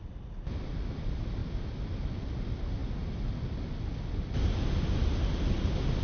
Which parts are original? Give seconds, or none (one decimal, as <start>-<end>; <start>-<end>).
0.0-6.0